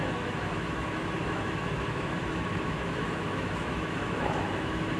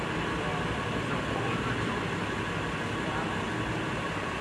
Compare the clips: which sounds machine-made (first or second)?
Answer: first